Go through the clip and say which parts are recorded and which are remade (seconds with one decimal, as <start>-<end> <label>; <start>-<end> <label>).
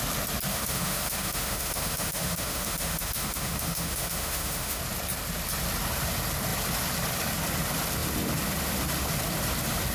0.0-0.5 recorded; 0.5-4.8 remade; 4.8-9.9 recorded